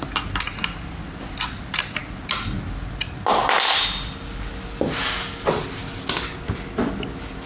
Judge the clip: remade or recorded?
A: recorded